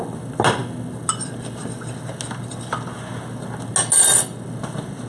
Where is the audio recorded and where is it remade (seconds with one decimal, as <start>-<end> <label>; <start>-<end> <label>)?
0.0-5.1 recorded